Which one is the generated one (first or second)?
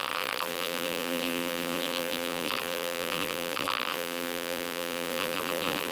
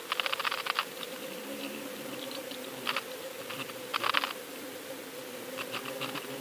first